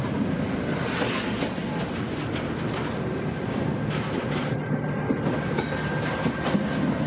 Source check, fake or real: real